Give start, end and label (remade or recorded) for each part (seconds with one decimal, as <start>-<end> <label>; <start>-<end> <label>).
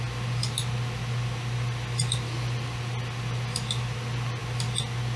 0.0-5.2 recorded